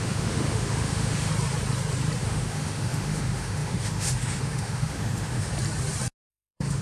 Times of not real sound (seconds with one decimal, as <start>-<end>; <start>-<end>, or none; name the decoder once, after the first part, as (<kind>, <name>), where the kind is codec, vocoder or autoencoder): 0.0-1.3 (autoencoder, DAC-VAE); 2.2-5.5; 6.3-6.8